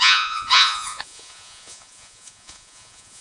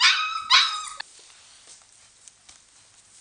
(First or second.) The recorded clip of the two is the second